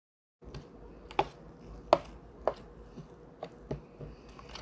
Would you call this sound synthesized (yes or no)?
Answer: no